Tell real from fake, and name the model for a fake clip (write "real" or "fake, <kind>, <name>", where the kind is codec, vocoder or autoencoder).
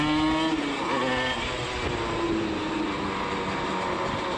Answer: real